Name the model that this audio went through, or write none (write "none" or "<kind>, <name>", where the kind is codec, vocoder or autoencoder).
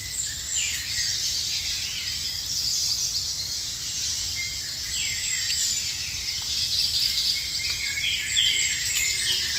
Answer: none